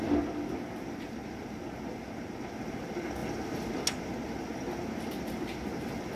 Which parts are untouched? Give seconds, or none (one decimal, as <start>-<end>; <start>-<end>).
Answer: 0.0-3.2; 3.7-6.2

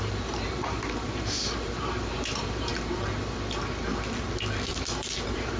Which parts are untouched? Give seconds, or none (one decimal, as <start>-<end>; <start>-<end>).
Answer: 2.7-4.7